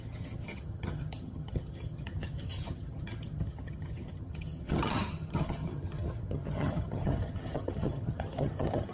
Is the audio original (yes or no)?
no